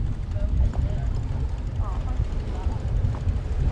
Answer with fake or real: real